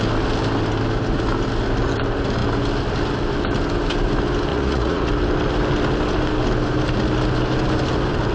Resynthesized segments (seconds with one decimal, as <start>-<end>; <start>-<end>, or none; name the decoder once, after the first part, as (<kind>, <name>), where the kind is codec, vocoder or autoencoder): 4.5-5.1 (vocoder, Vocos)